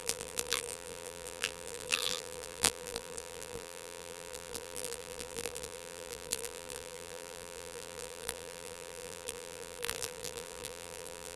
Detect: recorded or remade remade